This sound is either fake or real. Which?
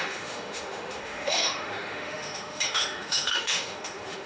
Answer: fake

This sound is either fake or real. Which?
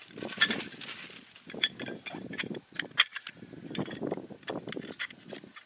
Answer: real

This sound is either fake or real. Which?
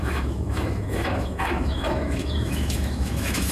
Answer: fake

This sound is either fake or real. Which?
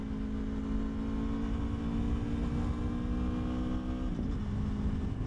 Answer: real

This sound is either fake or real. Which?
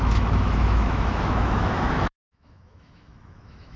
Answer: fake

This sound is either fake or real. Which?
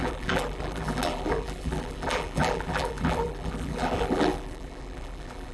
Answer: fake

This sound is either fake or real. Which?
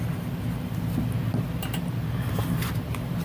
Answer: fake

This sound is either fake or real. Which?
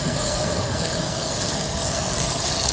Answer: fake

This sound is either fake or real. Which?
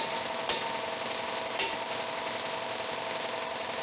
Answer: real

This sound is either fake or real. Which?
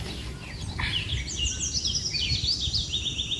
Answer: real